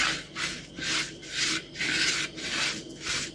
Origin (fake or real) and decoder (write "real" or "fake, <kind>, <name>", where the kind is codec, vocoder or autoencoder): real